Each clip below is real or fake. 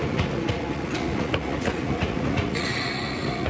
fake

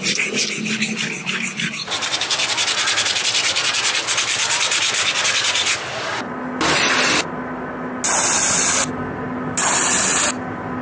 real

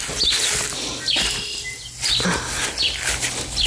real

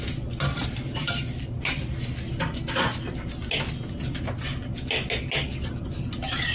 real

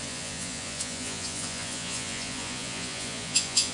fake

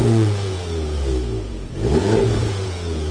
fake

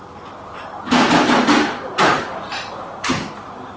real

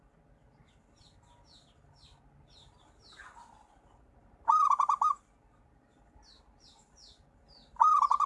real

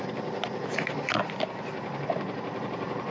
real